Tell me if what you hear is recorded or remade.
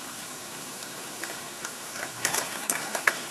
remade